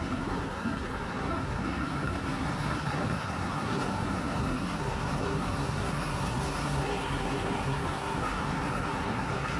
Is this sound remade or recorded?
remade